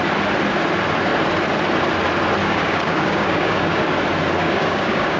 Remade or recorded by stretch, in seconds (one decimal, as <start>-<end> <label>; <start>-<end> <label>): 0.0-2.4 recorded; 2.4-3.8 remade; 3.8-4.4 recorded; 4.4-5.2 remade